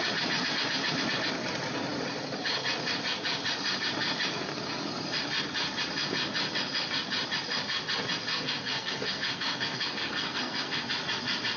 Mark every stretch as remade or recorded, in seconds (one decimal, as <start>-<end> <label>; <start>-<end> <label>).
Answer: 0.0-8.3 recorded; 8.3-10.9 remade; 10.9-11.6 recorded